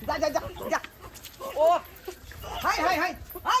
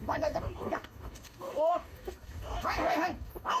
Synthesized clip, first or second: second